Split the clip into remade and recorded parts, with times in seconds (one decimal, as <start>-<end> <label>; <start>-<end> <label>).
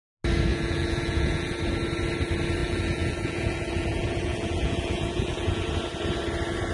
0.0-0.5 recorded; 0.5-1.6 remade; 1.6-2.6 recorded; 2.6-5.7 remade; 5.7-6.7 recorded